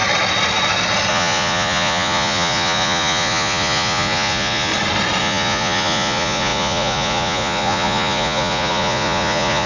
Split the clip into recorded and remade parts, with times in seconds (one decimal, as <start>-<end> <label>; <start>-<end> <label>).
0.0-1.1 recorded; 1.1-4.7 remade; 4.7-5.2 recorded; 5.2-9.7 remade